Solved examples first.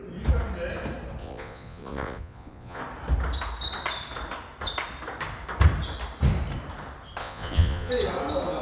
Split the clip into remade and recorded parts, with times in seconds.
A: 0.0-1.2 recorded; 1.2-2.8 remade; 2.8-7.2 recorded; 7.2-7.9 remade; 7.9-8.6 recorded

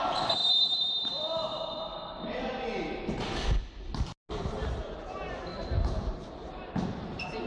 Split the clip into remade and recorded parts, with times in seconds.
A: 0.0-0.4 recorded; 0.4-1.6 remade; 1.6-7.5 recorded

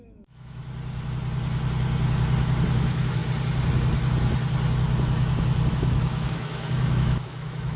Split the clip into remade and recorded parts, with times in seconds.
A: 0.0-0.6 remade; 0.6-2.7 recorded; 2.7-3.2 remade; 3.2-5.7 recorded; 5.7-7.8 remade

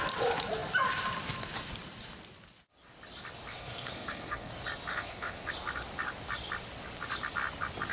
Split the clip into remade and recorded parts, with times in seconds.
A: 0.0-3.5 recorded; 3.5-4.5 remade; 4.5-4.9 recorded; 4.9-5.5 remade; 5.5-7.9 recorded

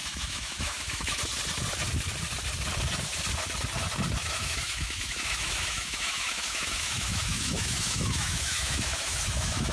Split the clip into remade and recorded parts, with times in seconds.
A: 0.0-1.2 remade; 1.2-4.2 recorded; 4.2-9.7 remade

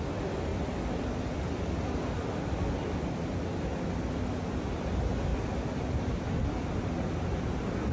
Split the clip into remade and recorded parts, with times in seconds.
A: 0.0-7.9 recorded

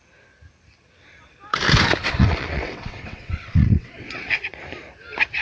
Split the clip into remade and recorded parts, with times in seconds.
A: 0.0-2.0 recorded; 2.0-4.4 remade; 4.4-5.4 recorded